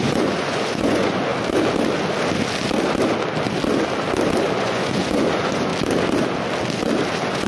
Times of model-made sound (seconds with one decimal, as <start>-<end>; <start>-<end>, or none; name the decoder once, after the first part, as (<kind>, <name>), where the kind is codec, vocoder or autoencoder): 0.0-1.3 (vocoder, Vocos); 4.6-5.7; 7.1-7.5